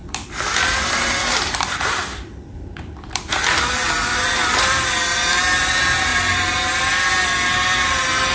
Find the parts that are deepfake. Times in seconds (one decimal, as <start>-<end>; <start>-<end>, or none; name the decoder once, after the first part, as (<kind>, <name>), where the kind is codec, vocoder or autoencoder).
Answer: 0.0-4.9 (vocoder, BigVGAN v2); 6.1-6.8